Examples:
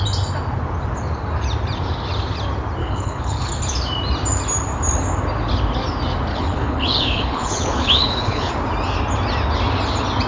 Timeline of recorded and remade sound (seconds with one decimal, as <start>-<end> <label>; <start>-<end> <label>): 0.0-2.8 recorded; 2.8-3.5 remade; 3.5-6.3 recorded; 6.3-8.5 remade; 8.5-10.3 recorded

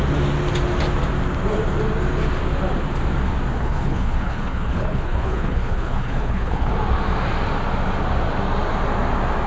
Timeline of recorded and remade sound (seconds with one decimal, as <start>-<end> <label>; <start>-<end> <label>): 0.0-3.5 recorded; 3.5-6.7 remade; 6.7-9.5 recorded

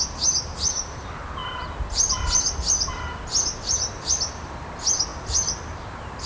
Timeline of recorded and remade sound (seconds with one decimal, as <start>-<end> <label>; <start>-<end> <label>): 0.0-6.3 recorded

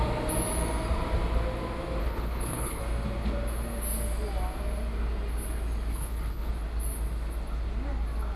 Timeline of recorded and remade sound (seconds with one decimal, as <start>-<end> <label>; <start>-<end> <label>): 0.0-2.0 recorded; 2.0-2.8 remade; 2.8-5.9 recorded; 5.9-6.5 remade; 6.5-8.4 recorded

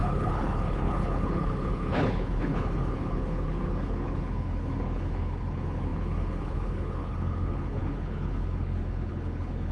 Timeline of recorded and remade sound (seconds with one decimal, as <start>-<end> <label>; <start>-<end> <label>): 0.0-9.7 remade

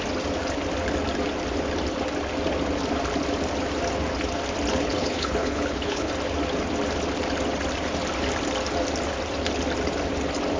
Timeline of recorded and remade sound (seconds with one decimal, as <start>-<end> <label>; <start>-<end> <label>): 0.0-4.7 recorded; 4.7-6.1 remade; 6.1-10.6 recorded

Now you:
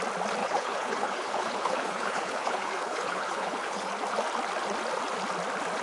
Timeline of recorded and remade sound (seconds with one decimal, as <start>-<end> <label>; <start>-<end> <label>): 0.0-0.4 recorded; 0.4-3.9 remade; 3.9-5.8 recorded